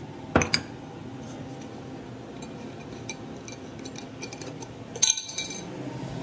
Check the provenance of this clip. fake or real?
real